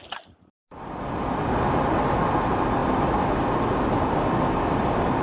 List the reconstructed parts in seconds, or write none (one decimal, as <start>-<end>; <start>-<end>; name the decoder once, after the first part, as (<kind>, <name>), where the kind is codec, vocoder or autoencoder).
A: none